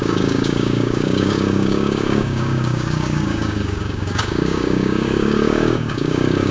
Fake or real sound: fake